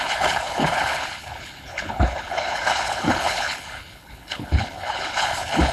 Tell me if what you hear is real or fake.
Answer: fake